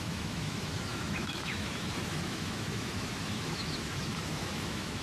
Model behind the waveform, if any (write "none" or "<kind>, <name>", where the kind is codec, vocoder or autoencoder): autoencoder, DAC-VAE